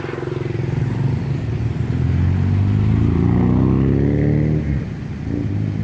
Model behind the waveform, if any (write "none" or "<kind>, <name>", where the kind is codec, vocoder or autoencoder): none